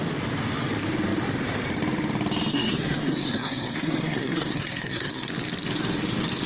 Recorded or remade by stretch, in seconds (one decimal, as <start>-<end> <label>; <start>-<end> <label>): 0.0-2.5 recorded; 2.5-5.3 remade; 5.3-6.5 recorded